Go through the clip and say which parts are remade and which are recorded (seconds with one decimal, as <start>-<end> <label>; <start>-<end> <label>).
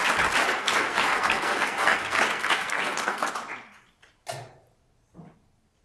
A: 0.0-0.4 recorded; 0.4-3.3 remade; 3.3-5.8 recorded